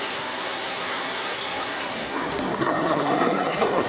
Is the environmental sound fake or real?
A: fake